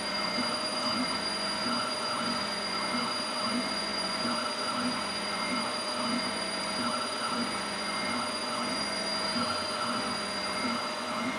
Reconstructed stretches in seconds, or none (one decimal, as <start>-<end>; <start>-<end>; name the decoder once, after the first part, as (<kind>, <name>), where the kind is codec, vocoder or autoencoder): 0.0-11.4 (vocoder, Vocos)